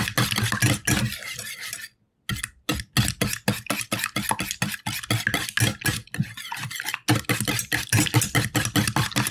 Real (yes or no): yes